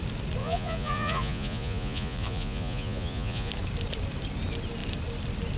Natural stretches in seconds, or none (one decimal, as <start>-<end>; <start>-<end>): 0.0-0.4; 3.5-5.6